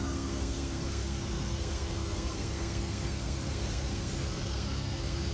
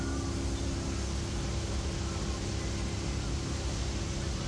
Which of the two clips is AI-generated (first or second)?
first